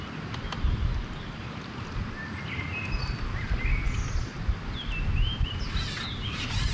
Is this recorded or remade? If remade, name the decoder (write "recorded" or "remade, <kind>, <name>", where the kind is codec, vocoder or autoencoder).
recorded